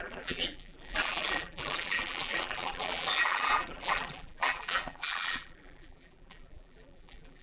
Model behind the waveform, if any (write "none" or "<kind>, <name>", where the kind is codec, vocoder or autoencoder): vocoder, BigVGAN v2